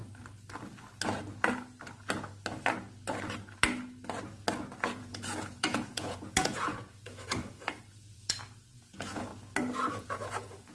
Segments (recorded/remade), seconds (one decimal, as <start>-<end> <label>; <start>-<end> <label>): 0.0-4.8 recorded; 4.8-9.3 remade; 9.3-9.9 recorded; 9.9-10.7 remade